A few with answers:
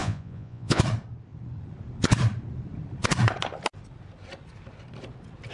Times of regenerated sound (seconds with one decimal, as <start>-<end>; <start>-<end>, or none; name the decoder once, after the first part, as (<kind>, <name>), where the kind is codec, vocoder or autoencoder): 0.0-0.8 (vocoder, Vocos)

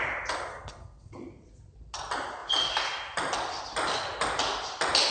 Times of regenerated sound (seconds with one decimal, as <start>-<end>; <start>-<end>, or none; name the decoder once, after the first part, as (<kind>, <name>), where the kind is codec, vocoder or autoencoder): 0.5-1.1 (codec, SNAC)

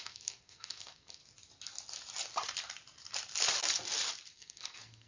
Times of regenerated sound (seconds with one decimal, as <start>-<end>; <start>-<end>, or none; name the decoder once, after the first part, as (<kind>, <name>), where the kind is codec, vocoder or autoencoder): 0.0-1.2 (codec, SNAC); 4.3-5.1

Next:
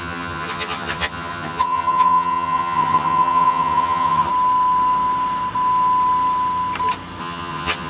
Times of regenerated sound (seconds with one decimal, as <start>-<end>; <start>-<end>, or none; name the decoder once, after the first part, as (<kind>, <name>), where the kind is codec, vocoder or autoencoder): 0.0-4.3 (vocoder, HiFi-GAN); 7.2-7.9